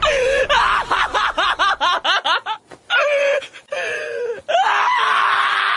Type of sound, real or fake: real